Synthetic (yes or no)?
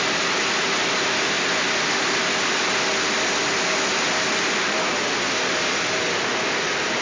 no